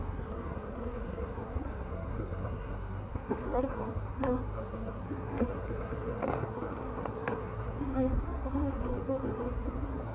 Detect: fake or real fake